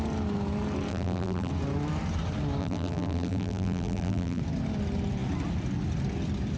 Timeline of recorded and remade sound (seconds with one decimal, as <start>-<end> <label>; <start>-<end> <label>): 0.0-0.9 recorded; 0.9-1.5 remade; 1.5-2.6 recorded; 2.6-4.4 remade; 4.4-6.6 recorded